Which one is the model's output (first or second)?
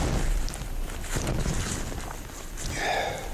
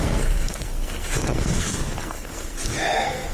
second